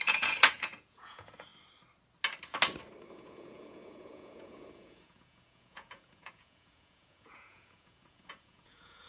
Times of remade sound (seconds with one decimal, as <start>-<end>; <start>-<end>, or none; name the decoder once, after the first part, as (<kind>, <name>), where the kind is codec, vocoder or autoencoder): 0.0-1.5 (vocoder, Vocos); 3.1-9.1